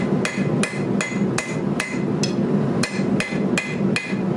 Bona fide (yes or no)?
yes